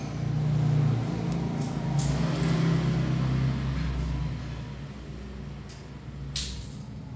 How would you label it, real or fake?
real